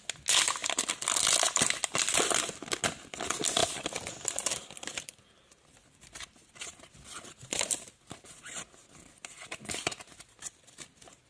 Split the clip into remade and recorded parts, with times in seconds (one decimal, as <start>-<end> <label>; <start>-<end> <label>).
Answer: 0.0-0.6 recorded; 0.6-2.8 remade; 2.8-3.6 recorded; 3.6-6.5 remade; 6.5-11.3 recorded